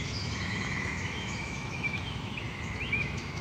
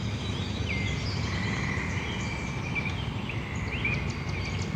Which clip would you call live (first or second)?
second